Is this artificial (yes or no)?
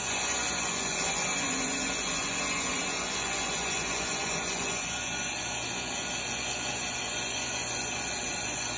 yes